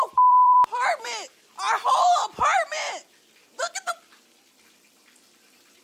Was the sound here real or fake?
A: fake